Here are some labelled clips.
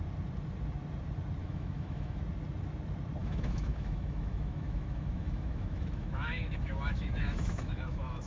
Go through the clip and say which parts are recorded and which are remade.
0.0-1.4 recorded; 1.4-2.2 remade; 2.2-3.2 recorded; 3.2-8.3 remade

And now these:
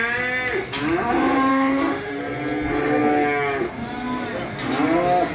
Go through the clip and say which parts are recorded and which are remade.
0.0-1.5 recorded; 1.5-2.2 remade; 2.2-5.3 recorded

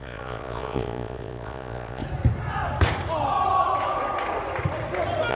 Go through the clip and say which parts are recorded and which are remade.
0.0-2.0 remade; 2.0-5.3 recorded

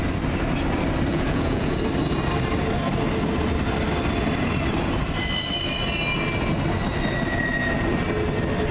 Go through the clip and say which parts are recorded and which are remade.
0.0-1.1 recorded; 1.1-1.8 remade; 1.8-8.7 recorded

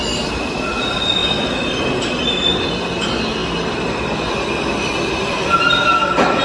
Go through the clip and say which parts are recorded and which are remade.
0.0-6.4 recorded